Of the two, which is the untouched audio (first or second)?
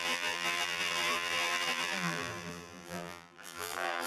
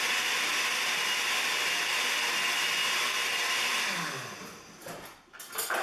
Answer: second